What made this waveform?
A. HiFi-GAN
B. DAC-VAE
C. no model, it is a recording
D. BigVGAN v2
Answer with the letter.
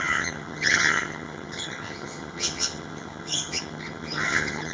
A